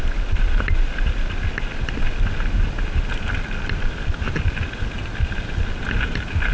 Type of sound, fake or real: real